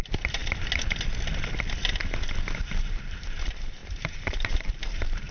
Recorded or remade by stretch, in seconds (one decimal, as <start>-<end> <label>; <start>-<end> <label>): 0.0-0.4 remade; 0.4-2.6 recorded; 2.6-5.3 remade